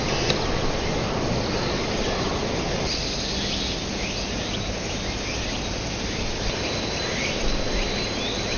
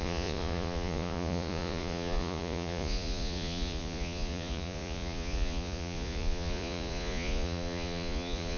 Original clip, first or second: first